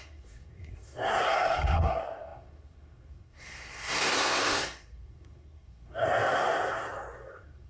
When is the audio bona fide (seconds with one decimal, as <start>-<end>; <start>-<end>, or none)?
none